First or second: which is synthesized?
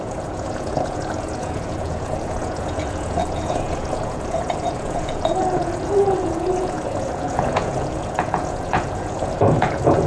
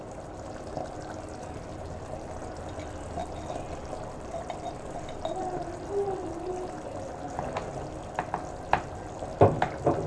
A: first